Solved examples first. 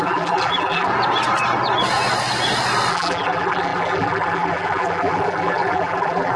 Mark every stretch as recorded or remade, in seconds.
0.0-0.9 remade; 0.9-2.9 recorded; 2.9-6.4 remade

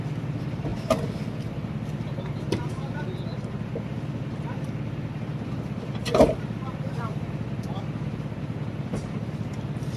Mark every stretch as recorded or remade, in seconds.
0.0-5.3 recorded; 5.3-10.0 remade

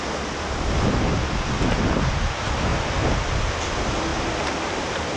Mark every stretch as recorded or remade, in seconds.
0.0-2.7 remade; 2.7-3.6 recorded; 3.6-4.1 remade; 4.1-4.6 recorded; 4.6-5.2 remade

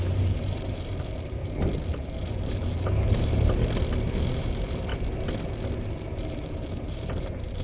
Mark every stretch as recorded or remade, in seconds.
0.0-1.4 remade; 1.4-2.3 recorded; 2.3-3.6 remade; 3.6-4.1 recorded; 4.1-4.9 remade; 4.9-6.2 recorded; 6.2-7.6 remade